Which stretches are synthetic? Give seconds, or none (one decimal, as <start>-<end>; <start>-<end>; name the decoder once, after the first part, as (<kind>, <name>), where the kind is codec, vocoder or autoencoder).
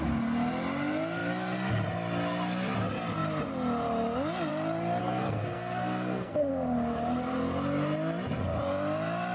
5.0-6.5 (codec, SNAC)